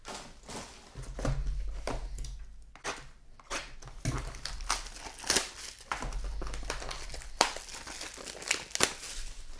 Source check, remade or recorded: recorded